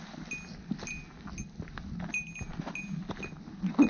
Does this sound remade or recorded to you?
recorded